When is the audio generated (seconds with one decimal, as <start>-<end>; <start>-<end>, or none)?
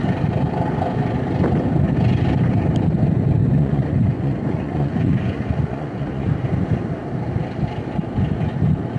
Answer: 3.4-6.3